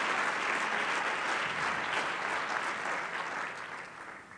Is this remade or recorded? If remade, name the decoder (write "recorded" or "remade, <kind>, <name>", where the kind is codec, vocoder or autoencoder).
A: recorded